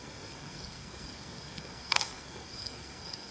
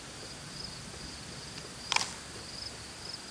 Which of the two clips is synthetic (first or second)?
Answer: first